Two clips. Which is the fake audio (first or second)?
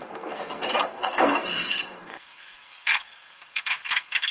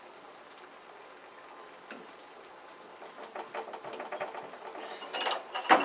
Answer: first